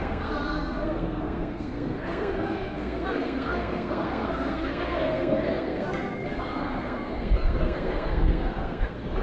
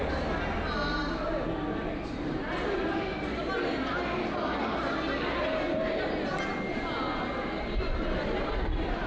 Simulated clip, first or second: first